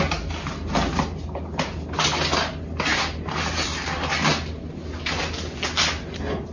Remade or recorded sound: recorded